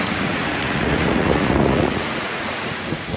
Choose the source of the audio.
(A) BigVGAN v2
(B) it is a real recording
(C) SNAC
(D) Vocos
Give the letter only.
D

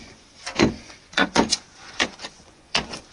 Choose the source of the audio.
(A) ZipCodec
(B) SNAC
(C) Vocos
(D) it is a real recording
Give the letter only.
C